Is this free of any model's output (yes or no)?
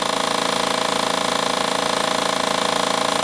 yes